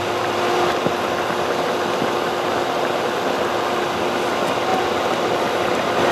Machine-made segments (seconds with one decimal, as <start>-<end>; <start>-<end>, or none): none